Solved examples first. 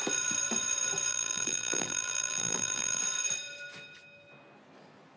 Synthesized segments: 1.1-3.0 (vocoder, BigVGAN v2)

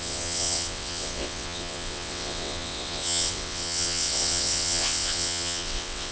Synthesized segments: 0.0-6.1 (vocoder, WaveNeXt)

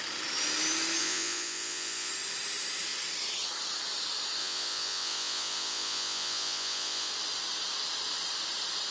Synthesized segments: 1.0-2.1 (vocoder, Vocos); 4.4-7.1

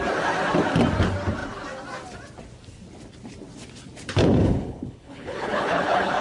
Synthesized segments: 4.2-6.2 (codec, HILCodec)

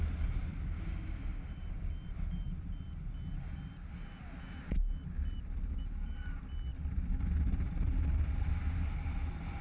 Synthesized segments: none